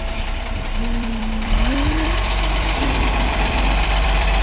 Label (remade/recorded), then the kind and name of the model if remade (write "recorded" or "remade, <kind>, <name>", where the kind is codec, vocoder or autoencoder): remade, vocoder, BigVGAN v2